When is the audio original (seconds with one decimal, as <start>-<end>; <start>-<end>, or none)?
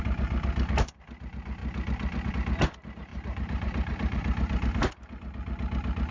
0.0-3.1; 4.9-6.1